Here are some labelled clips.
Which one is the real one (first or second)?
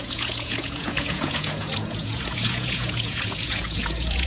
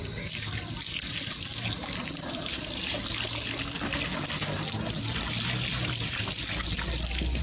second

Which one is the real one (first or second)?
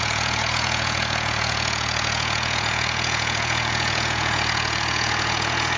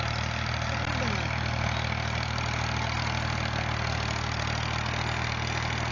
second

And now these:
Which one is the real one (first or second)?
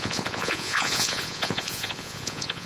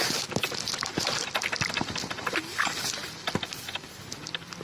second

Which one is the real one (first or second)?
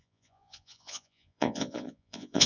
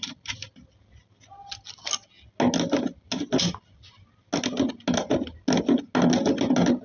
second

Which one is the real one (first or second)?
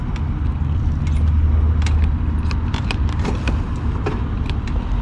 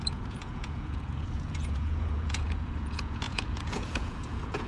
first